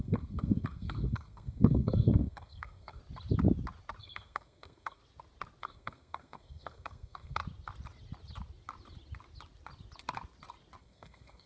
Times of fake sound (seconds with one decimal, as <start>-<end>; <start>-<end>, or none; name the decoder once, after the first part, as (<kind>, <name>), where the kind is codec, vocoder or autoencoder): 0.0-3.0 (codec, SNAC); 4.0-5.0; 5.6-7.4; 10.8-11.5